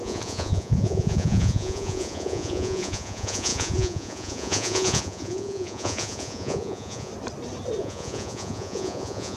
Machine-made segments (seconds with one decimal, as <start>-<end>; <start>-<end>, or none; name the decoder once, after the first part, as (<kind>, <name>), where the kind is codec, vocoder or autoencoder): 0.0-7.1 (vocoder, Vocos); 7.8-9.4